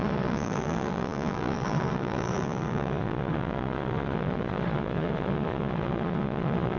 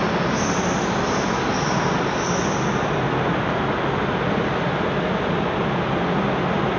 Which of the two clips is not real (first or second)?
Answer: first